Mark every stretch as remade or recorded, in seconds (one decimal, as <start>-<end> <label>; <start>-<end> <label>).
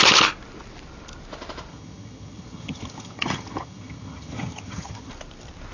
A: 0.0-1.7 recorded; 1.7-5.1 remade; 5.1-5.7 recorded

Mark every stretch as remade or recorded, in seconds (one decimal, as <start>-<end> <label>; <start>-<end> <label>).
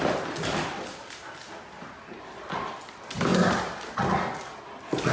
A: 0.0-5.1 recorded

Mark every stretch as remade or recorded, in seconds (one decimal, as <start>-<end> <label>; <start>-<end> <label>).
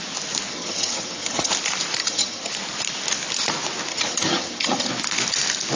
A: 0.0-0.5 recorded; 0.5-1.5 remade; 1.5-2.0 recorded; 2.0-2.5 remade; 2.5-3.9 recorded; 3.9-4.9 remade; 4.9-5.8 recorded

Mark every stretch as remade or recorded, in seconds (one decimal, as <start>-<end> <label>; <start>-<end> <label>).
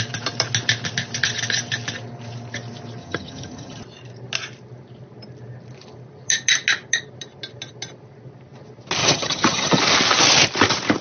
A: 0.0-3.0 recorded; 3.0-3.8 remade; 3.8-9.0 recorded; 9.0-9.8 remade; 9.8-11.0 recorded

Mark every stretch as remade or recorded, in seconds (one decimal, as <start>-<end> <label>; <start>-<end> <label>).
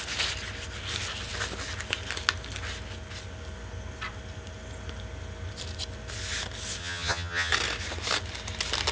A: 0.0-6.8 recorded; 6.8-7.5 remade; 7.5-8.9 recorded